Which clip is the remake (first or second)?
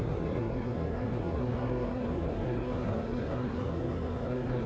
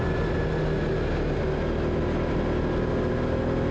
first